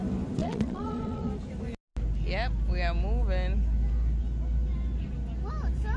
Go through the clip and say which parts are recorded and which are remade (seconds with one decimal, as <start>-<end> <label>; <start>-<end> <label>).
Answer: 0.0-0.4 recorded; 0.4-1.3 remade; 1.3-6.0 recorded